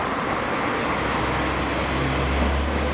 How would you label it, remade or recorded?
recorded